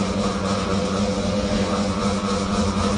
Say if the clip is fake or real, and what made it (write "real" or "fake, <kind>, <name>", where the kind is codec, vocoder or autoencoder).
fake, vocoder, Vocos